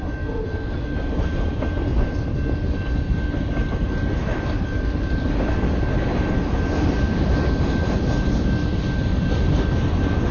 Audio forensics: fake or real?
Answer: real